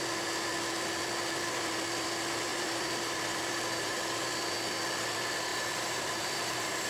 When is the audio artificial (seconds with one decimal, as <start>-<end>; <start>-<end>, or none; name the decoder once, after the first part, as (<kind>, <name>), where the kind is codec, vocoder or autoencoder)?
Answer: 2.5-4.2 (vocoder, BigVGAN v2); 5.5-6.9